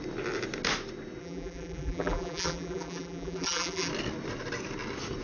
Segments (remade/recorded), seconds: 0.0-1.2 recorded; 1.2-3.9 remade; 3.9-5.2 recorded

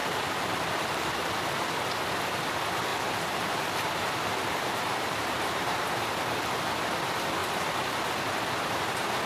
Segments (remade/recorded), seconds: 0.0-1.3 remade; 1.3-2.9 recorded; 2.9-5.9 remade; 5.9-9.3 recorded

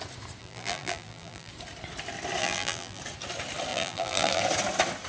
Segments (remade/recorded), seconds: 0.0-0.4 recorded; 0.4-1.5 remade; 1.5-2.4 recorded; 2.4-3.0 remade; 3.0-3.7 recorded; 3.7-4.4 remade; 4.4-5.1 recorded

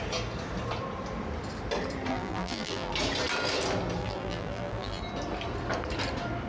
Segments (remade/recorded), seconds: 0.0-2.1 recorded; 2.1-2.9 remade; 2.9-4.0 recorded; 4.0-5.0 remade; 5.0-6.5 recorded

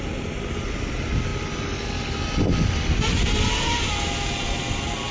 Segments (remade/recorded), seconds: 0.0-5.1 recorded

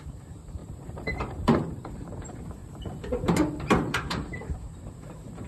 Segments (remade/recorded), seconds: 0.0-2.6 remade; 2.6-4.1 recorded; 4.1-5.5 remade

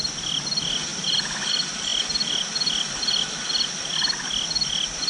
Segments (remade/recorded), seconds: 0.0-0.9 recorded; 0.9-1.5 remade; 1.5-5.1 recorded

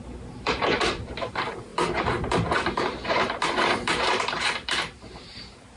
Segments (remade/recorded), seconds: 0.0-5.8 remade